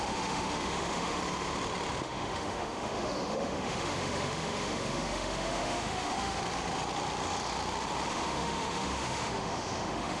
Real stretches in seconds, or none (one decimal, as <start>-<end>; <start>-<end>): 1.2-2.0; 6.4-8.1